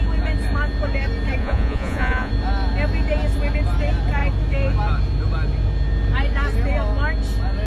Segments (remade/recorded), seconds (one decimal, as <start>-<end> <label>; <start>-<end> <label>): 0.0-1.4 recorded; 1.4-2.3 remade; 2.3-7.7 recorded